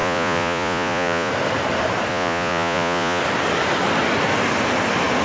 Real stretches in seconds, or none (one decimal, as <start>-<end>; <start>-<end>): 1.3-2.1; 3.2-5.2